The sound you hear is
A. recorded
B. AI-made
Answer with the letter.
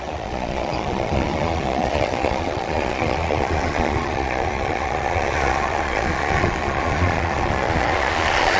B